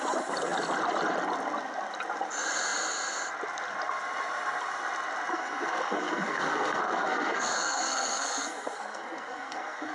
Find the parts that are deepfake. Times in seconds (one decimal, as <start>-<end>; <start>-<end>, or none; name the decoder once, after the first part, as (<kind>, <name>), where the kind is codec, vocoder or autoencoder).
5.3-9.9 (codec, SNAC)